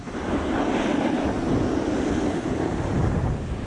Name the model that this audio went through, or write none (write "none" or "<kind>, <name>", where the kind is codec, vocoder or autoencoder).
none